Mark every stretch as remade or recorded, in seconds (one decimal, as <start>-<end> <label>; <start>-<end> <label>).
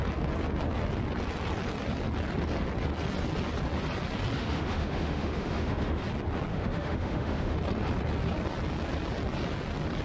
0.0-4.4 recorded; 4.4-6.0 remade; 6.0-6.5 recorded; 6.5-7.6 remade; 7.6-10.0 recorded